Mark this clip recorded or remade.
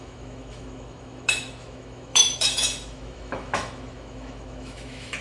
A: remade